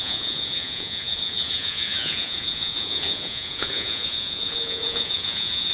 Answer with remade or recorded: remade